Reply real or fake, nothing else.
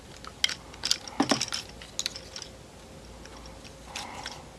real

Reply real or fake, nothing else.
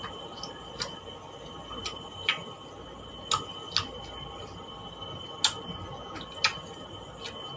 real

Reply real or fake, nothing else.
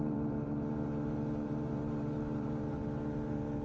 fake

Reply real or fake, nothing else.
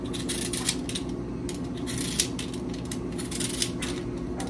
real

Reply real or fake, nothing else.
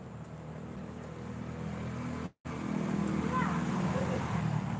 real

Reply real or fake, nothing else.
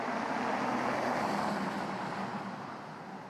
real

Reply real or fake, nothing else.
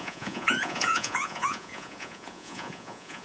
fake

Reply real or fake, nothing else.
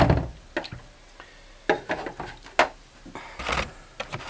real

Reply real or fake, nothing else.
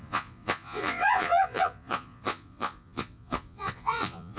fake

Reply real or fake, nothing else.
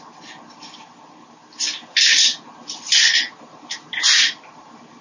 real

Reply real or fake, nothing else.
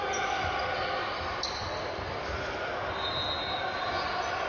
real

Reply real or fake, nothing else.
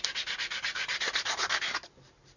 real